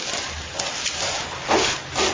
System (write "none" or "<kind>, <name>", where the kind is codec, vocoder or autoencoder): none